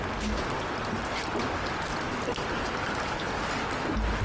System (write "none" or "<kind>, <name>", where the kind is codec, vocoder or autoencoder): vocoder, BigVGAN v2